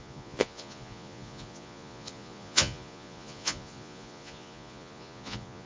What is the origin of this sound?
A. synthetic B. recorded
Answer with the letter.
A